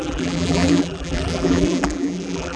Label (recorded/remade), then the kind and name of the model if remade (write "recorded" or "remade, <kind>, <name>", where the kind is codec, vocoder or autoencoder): remade, vocoder, BigVGAN v2